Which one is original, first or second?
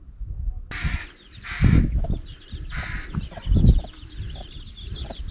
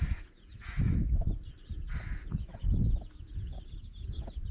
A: first